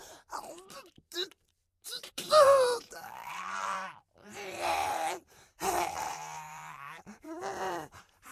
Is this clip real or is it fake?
fake